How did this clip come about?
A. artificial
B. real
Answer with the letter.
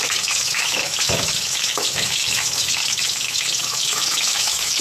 A